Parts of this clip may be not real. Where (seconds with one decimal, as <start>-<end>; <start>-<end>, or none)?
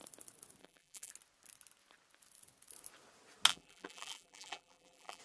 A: 0.6-1.1; 3.5-5.2